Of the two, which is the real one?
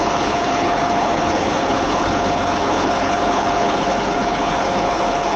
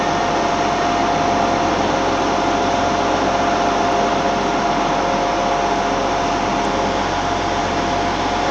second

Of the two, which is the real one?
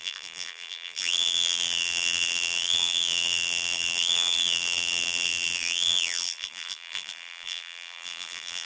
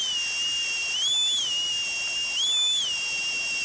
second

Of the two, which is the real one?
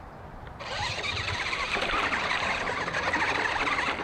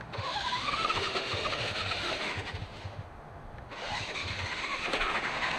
first